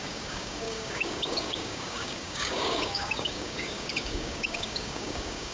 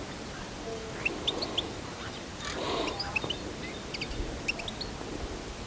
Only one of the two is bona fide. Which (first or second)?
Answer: second